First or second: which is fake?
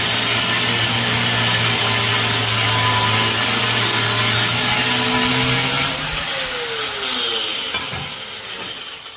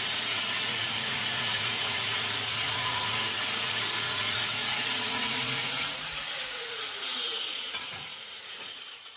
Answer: second